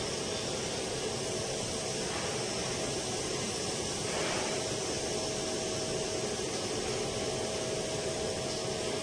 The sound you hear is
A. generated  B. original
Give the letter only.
B